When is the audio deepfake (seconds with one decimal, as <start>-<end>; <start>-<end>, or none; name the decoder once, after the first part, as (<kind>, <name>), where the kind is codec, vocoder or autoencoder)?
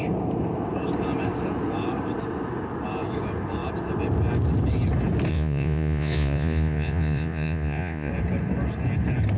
5.3-8.1 (vocoder, Vocos)